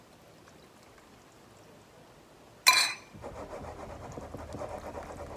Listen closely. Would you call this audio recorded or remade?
recorded